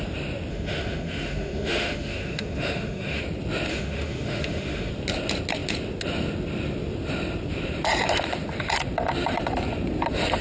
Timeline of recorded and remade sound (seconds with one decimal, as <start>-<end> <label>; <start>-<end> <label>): 0.0-0.5 recorded; 0.5-3.2 remade; 3.2-3.7 recorded; 3.7-4.9 remade; 4.9-10.4 recorded